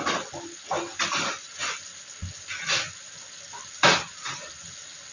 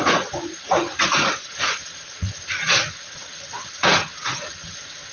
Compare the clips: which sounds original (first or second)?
first